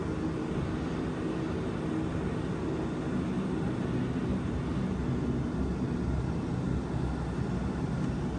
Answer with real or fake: real